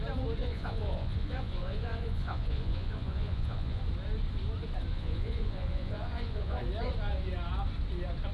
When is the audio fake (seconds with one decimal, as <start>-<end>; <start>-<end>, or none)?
0.4-3.8; 4.9-6.6